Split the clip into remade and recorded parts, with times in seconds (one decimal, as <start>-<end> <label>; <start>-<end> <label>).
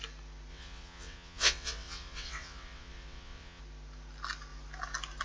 0.0-0.5 recorded; 0.5-3.6 remade; 3.6-5.2 recorded